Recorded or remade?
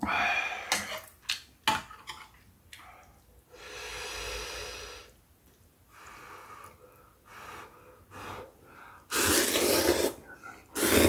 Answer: recorded